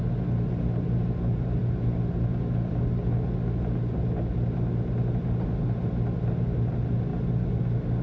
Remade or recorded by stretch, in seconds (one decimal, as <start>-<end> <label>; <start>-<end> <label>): 0.0-8.0 recorded